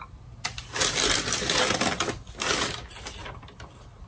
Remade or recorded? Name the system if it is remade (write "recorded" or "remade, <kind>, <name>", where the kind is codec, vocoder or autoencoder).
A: recorded